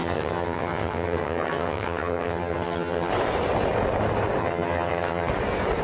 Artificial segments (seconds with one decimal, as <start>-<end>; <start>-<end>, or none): 0.0-3.1; 4.4-5.3